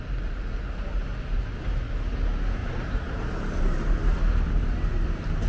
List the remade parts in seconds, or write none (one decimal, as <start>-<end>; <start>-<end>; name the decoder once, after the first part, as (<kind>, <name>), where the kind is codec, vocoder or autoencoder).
1.1-1.7 (vocoder, BigVGAN v2); 2.6-5.5